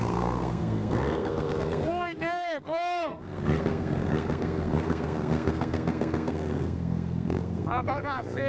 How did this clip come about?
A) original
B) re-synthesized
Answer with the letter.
B